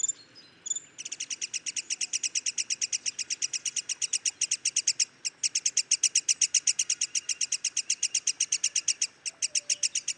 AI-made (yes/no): no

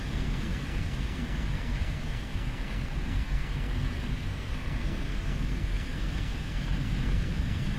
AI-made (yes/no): yes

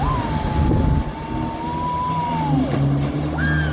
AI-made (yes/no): no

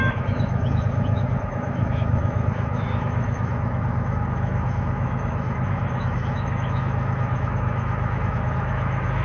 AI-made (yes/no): yes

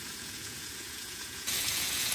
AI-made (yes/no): yes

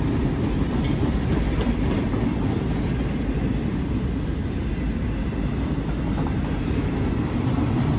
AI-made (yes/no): no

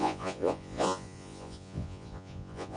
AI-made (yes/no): yes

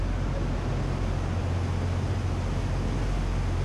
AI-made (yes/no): no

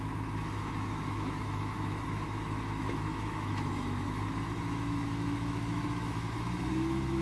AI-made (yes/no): yes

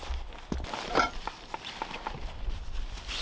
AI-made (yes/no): no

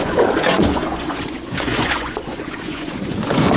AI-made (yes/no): yes